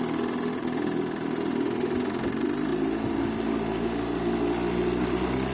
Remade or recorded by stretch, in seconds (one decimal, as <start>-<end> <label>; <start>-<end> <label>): 0.0-5.5 recorded